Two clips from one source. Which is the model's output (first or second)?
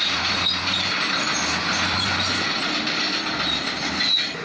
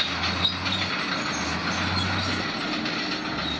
first